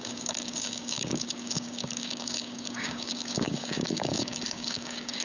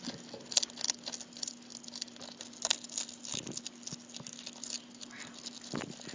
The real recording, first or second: second